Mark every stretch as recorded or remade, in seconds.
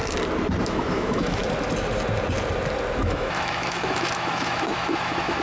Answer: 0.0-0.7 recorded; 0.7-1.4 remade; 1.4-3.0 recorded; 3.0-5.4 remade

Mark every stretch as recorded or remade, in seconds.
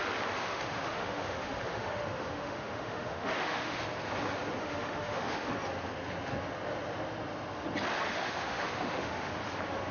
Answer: 0.0-0.4 recorded; 0.4-3.8 remade; 3.8-4.6 recorded; 4.6-5.5 remade; 5.5-8.1 recorded; 8.1-9.3 remade; 9.3-9.9 recorded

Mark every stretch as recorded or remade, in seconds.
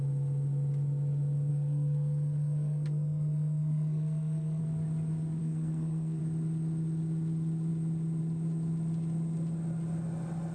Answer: 0.0-1.5 recorded; 1.5-4.6 remade; 4.6-5.4 recorded; 5.4-6.2 remade; 6.2-10.5 recorded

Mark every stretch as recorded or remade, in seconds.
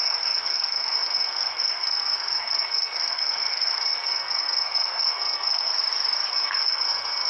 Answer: 0.0-5.7 remade; 5.7-6.3 recorded; 6.3-7.3 remade